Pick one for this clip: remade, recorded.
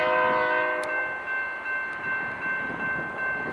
recorded